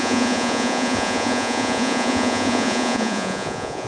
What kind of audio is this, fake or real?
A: fake